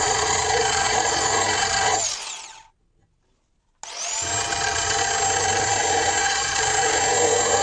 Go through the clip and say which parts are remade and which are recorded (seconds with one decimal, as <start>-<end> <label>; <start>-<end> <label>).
0.0-1.3 remade; 1.3-6.2 recorded; 6.2-7.0 remade; 7.0-7.6 recorded